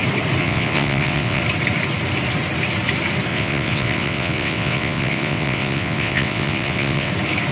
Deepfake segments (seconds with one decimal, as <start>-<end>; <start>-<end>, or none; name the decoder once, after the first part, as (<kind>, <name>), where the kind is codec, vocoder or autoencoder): 0.4-1.4 (vocoder, WaveNeXt); 3.3-7.1